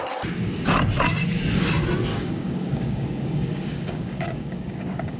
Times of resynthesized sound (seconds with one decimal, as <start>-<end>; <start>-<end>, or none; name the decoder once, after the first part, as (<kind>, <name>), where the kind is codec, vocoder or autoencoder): 2.1-5.2 (codec, DAC)